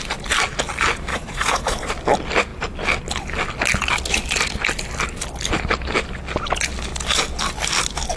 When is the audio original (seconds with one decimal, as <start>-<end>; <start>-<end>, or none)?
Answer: 0.0-1.1; 1.9-8.2